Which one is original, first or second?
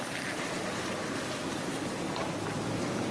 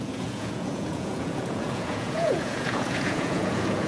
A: first